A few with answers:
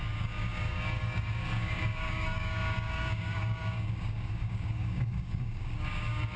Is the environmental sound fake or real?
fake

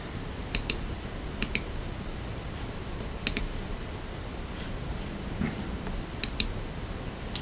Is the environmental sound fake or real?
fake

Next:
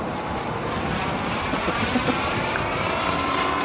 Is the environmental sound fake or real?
fake